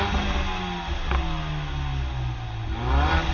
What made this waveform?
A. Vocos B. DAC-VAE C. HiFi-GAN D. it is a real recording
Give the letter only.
D